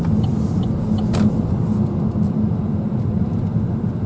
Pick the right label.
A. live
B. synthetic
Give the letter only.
A